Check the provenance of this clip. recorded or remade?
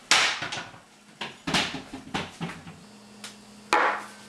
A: recorded